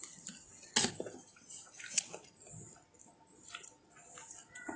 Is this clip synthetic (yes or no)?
no